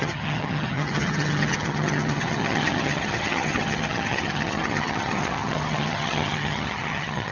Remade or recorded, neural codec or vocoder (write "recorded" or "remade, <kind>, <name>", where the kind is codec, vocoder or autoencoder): remade, vocoder, HiFi-GAN